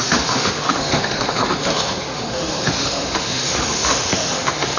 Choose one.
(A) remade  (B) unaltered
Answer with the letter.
A